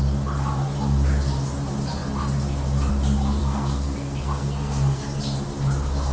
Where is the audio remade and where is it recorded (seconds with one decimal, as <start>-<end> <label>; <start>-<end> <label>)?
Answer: 0.0-3.4 recorded; 3.4-5.2 remade; 5.2-6.1 recorded